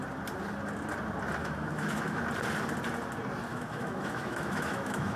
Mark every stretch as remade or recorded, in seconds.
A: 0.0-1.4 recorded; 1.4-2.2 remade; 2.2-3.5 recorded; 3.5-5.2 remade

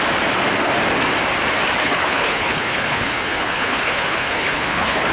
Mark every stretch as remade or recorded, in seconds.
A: 0.0-1.8 recorded; 1.8-5.1 remade

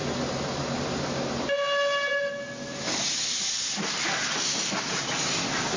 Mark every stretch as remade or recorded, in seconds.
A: 0.0-5.8 recorded

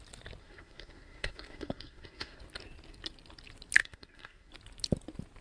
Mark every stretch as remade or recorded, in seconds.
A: 0.0-0.4 recorded; 0.4-2.4 remade; 2.4-3.8 recorded; 3.8-4.5 remade; 4.5-5.4 recorded

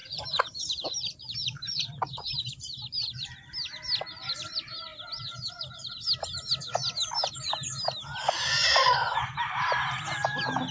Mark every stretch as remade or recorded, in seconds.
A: 0.0-3.3 remade; 3.3-10.7 recorded

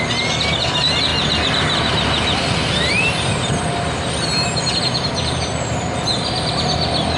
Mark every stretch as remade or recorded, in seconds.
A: 0.0-7.2 recorded

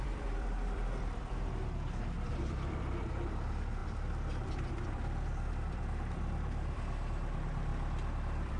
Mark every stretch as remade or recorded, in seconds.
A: 0.0-8.6 remade